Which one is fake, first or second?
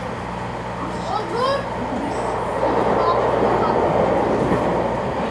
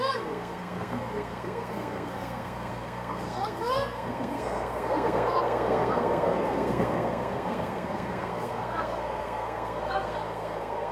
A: second